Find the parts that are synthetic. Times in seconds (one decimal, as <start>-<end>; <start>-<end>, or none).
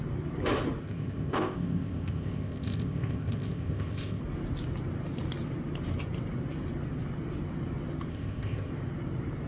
0.8-4.2; 8.1-8.7